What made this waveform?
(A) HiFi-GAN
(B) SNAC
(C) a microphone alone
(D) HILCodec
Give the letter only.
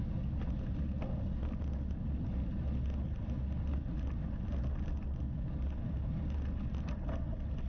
C